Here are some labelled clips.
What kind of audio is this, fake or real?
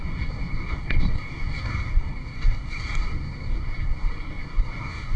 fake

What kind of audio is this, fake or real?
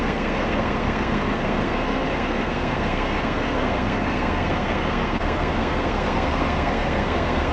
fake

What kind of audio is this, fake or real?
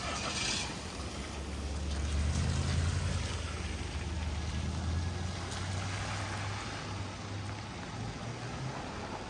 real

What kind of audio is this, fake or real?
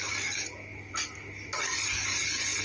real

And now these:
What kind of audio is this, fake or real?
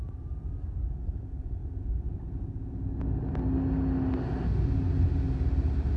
real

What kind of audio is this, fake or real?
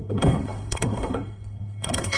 fake